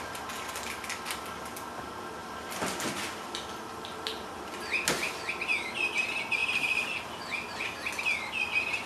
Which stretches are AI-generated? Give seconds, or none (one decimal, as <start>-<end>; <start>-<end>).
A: none